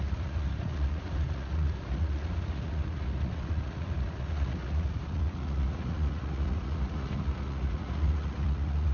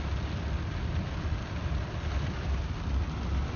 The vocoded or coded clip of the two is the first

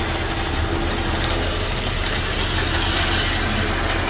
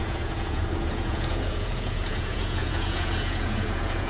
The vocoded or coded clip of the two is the second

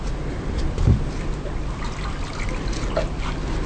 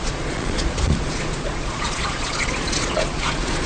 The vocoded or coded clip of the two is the second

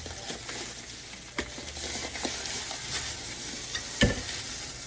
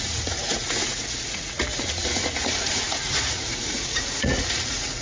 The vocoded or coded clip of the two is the second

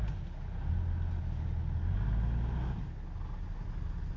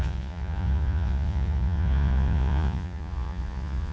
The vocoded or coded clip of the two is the second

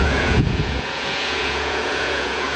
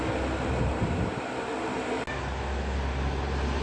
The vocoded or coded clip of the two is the first